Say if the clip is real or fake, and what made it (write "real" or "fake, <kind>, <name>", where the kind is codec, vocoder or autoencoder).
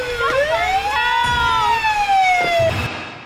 real